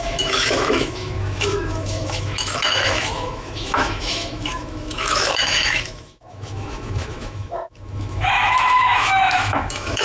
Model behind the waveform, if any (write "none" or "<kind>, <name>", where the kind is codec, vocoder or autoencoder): autoencoder, DAC-VAE